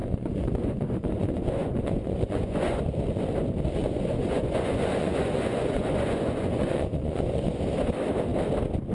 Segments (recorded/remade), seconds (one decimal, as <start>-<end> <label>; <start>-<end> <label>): 0.0-2.8 remade; 2.8-3.8 recorded; 3.8-7.6 remade; 7.6-8.9 recorded